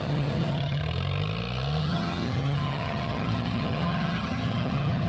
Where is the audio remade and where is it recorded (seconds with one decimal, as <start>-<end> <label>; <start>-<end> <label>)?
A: 0.0-0.8 remade; 0.8-1.8 recorded; 1.8-5.1 remade